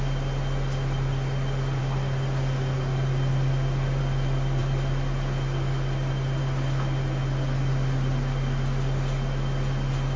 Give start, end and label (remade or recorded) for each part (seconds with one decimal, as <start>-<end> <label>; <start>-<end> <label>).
0.0-10.2 recorded